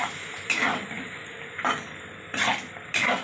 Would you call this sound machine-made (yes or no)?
no